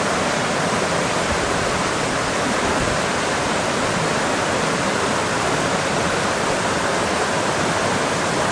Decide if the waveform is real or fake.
real